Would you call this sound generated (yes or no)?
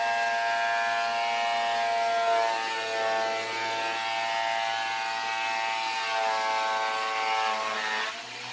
no